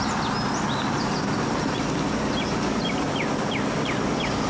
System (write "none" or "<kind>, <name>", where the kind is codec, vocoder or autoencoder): none